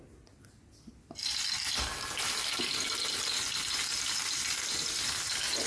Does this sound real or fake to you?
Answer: real